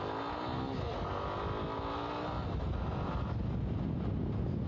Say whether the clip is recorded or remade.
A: recorded